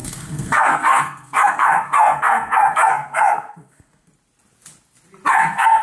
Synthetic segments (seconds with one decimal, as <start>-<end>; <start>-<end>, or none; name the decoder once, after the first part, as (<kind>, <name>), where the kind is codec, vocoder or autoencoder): 0.0-4.1 (codec, SNAC); 5.3-5.8